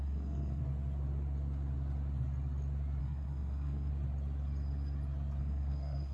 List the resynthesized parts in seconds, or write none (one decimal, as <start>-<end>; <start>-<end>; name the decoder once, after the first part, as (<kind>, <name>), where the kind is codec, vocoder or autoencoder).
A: 0.0-0.6 (codec, SNAC); 3.0-3.9; 5.4-6.1